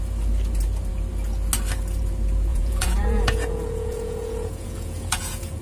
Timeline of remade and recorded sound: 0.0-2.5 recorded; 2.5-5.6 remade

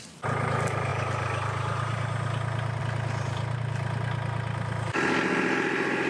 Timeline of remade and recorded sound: 0.0-6.1 recorded

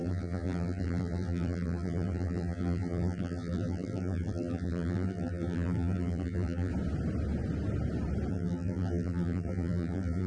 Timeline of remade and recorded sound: 0.0-6.7 remade; 6.7-8.3 recorded; 8.3-10.3 remade